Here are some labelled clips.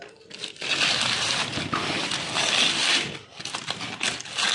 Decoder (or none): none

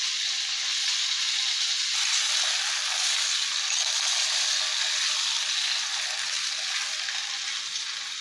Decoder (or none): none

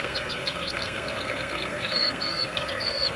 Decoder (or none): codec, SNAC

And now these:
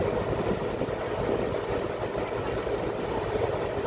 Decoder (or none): none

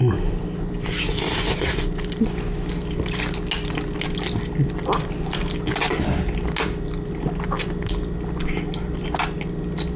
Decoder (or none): none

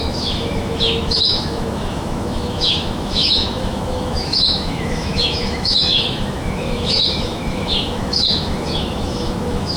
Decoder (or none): autoencoder, DAC-VAE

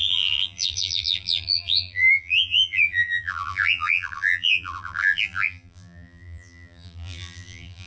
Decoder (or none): vocoder, BigVGAN v2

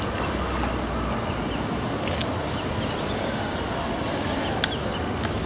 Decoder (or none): none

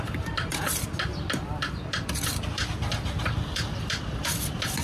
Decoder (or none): none